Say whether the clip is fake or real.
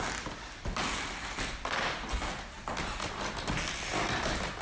real